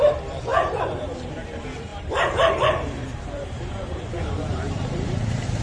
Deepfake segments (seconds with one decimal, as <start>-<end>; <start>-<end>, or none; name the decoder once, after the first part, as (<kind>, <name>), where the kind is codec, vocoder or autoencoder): 0.5-1.3 (vocoder, BigVGAN v2); 1.9-5.6